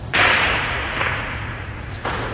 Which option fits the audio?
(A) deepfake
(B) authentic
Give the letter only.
A